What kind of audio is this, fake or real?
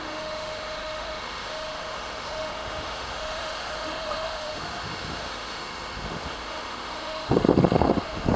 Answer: fake